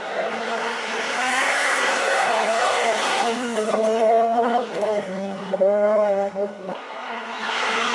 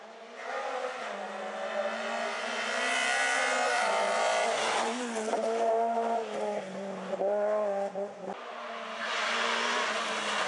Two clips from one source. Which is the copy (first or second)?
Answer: first